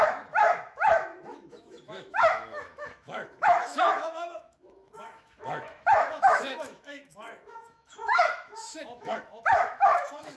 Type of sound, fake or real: fake